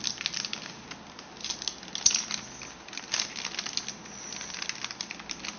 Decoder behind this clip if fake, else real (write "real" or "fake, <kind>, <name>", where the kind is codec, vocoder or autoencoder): real